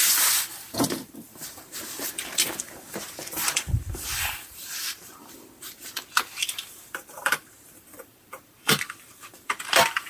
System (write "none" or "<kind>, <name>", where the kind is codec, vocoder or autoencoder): vocoder, BigVGAN v2